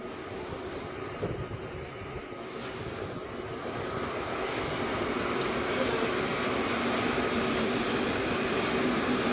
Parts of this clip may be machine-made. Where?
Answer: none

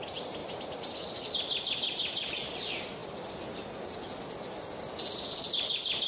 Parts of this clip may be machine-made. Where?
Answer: none

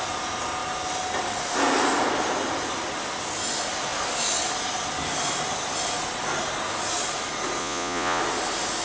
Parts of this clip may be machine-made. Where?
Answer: 7.6-8.2